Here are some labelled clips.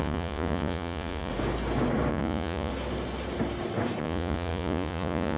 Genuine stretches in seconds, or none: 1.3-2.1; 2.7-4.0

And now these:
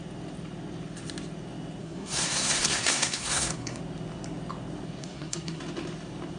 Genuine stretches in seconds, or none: 0.0-1.8; 3.8-5.0; 5.6-6.4

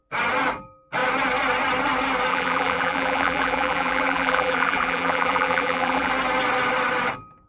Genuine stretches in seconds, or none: 0.0-2.3; 6.1-7.5

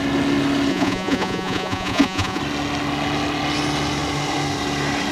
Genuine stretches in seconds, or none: 0.0-0.7; 2.4-5.1

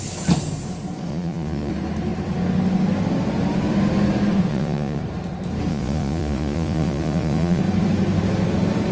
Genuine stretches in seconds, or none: 0.0-1.1; 1.7-4.5; 5.0-5.7; 7.6-8.9

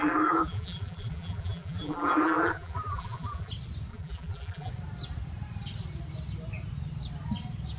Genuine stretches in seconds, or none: 3.5-3.9; 4.7-7.8

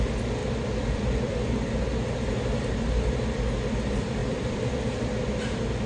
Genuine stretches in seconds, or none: 0.0-0.4; 1.5-4.2; 4.8-5.9